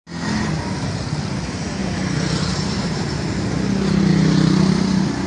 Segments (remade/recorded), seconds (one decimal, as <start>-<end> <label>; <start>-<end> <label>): 0.0-5.3 recorded